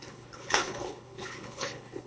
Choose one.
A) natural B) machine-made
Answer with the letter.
B